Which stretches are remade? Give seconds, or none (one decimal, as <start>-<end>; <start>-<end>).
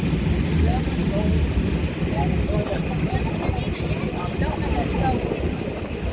none